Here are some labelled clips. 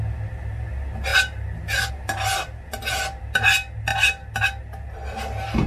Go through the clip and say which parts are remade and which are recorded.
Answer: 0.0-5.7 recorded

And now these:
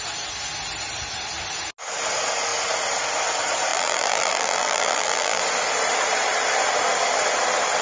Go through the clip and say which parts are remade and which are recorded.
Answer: 0.0-3.7 recorded; 3.7-5.4 remade; 5.4-7.8 recorded

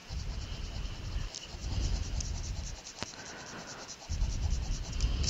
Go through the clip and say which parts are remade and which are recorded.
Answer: 0.0-1.1 remade; 1.1-5.3 recorded